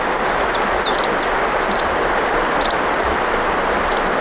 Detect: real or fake real